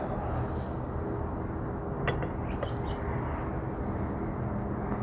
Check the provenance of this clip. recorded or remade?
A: recorded